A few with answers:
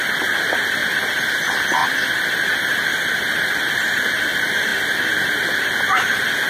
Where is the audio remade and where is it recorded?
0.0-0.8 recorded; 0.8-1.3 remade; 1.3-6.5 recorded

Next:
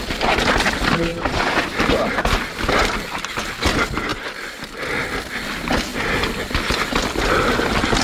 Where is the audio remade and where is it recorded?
0.0-1.1 recorded; 1.1-2.6 remade; 2.6-4.1 recorded; 4.1-4.8 remade; 4.8-8.0 recorded

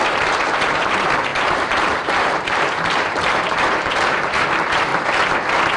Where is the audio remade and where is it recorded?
0.0-4.9 remade; 4.9-5.8 recorded

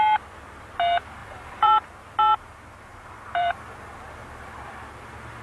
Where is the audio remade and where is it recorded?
0.0-1.2 recorded; 1.2-1.9 remade; 1.9-2.9 recorded; 2.9-3.6 remade; 3.6-5.4 recorded